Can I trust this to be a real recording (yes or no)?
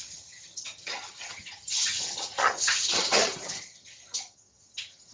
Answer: no